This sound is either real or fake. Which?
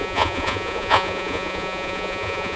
fake